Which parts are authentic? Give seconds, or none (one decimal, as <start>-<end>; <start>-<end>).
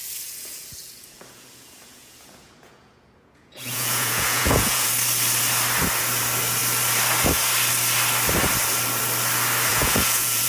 4.9-9.7